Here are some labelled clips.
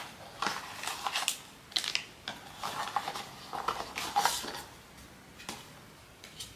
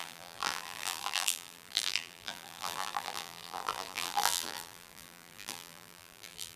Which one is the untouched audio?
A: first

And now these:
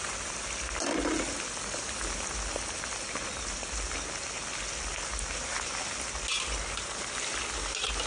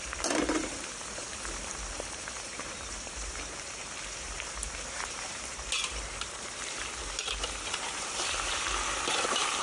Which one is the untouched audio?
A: first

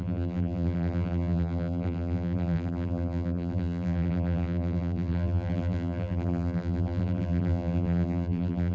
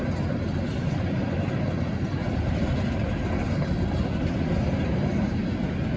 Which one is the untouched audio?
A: second